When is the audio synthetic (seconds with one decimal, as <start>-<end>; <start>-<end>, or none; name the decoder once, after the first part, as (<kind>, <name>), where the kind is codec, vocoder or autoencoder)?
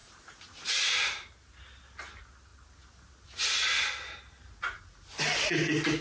none